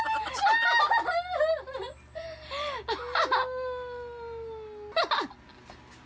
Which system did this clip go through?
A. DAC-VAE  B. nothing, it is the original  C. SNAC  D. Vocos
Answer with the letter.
B